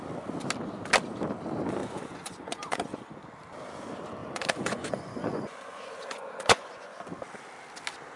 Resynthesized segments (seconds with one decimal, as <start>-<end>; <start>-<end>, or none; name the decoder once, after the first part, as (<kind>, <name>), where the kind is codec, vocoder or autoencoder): 1.8-3.3 (vocoder, Vocos); 4.2-7.0